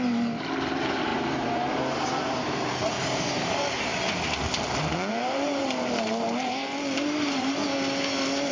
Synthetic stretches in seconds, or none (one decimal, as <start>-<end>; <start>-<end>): 0.0-3.9; 5.1-7.6